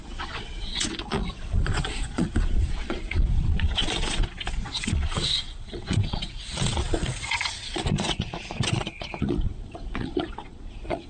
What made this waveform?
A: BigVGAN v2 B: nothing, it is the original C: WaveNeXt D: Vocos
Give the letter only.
D